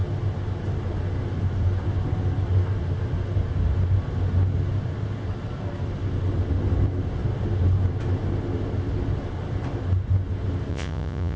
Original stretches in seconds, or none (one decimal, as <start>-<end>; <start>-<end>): 0.0-10.7